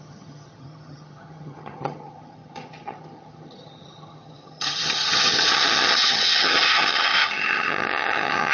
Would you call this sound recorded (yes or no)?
no